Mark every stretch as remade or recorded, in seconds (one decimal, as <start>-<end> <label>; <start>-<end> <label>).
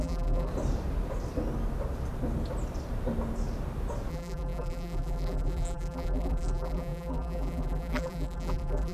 0.0-0.5 remade; 0.5-4.1 recorded; 4.1-8.9 remade